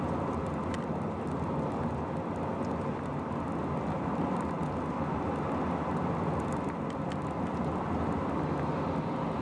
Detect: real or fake real